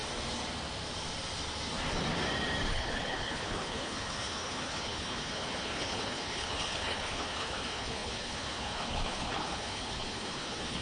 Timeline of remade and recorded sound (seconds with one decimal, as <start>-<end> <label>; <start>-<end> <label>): 0.0-2.7 recorded; 2.7-10.8 remade